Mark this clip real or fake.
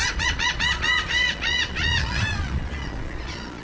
fake